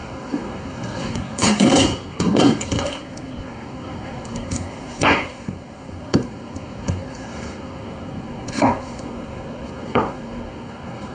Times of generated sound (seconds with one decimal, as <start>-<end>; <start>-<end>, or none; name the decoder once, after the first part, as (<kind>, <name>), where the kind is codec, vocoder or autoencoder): 0.0-11.1 (codec, SNAC)